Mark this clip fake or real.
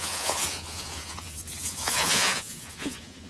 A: fake